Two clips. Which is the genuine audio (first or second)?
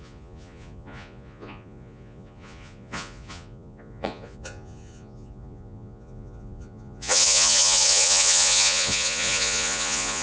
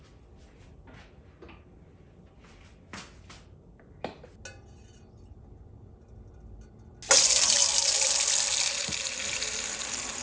second